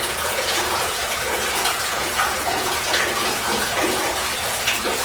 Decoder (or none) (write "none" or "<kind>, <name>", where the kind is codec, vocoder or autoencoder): vocoder, Vocos